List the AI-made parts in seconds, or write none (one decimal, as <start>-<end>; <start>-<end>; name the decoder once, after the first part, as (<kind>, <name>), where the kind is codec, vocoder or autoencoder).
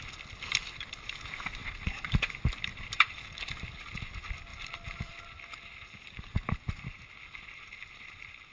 1.6-2.2 (vocoder, BigVGAN v2); 2.7-3.7; 4.5-5.1